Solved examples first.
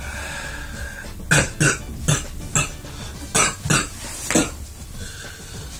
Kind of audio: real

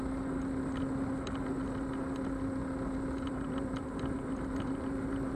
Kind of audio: real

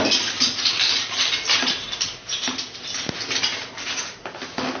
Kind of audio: real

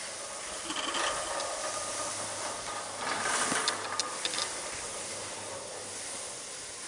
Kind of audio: real